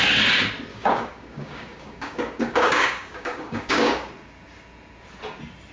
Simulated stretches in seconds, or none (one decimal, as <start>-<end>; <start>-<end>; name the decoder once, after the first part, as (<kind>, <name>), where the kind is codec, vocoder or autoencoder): 0.7-4.1 (codec, DAC)